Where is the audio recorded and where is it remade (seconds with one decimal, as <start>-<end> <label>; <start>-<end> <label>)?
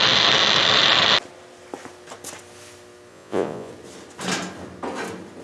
0.0-3.1 recorded; 3.1-3.7 remade; 3.7-5.4 recorded